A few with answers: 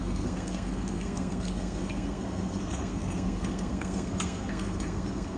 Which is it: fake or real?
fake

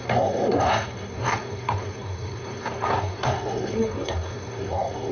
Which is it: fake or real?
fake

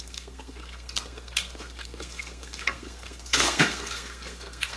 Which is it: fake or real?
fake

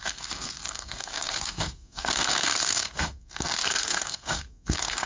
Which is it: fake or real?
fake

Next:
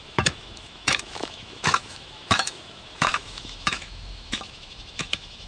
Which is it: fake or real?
fake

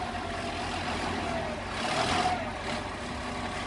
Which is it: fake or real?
real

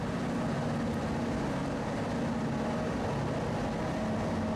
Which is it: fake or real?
real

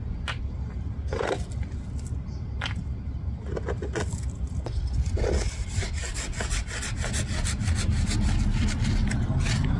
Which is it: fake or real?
real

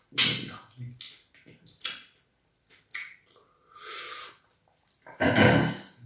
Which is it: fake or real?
real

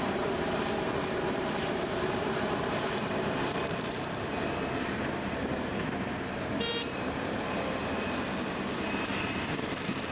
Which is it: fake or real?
fake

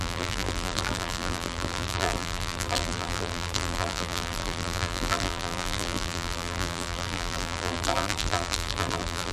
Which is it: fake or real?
fake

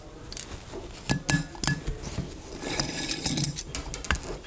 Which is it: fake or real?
real